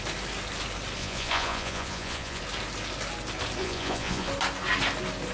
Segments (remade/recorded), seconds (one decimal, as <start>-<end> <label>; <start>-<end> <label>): 0.0-1.0 recorded; 1.0-2.4 remade; 2.4-3.6 recorded; 3.6-4.3 remade; 4.3-5.3 recorded